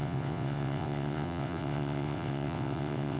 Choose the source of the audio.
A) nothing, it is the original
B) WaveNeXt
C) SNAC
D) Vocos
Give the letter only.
B